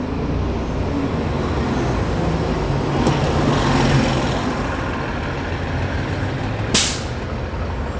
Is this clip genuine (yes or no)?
yes